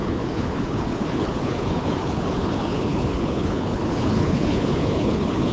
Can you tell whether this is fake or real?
fake